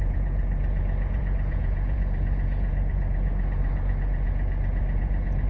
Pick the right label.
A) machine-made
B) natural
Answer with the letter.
A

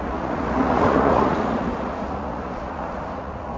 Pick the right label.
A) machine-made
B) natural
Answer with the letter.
A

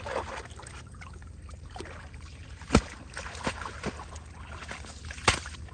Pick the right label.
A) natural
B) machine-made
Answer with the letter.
A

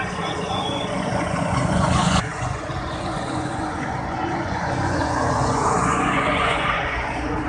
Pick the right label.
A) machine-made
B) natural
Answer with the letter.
A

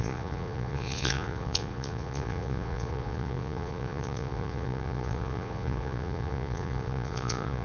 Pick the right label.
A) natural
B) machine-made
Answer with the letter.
B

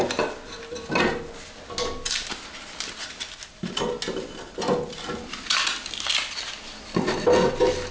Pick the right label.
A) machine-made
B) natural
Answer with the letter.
B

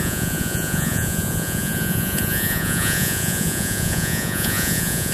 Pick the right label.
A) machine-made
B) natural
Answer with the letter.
A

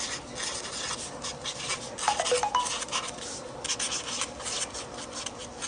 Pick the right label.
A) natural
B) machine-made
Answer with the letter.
A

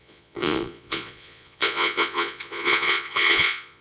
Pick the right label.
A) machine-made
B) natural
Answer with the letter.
A